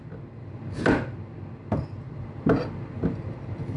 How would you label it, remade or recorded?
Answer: recorded